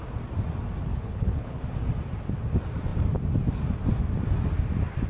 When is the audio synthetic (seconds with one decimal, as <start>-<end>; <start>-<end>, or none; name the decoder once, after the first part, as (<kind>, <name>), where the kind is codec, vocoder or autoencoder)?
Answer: 0.9-1.6 (codec, HILCodec)